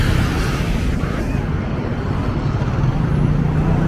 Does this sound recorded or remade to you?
recorded